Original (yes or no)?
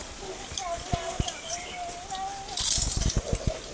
yes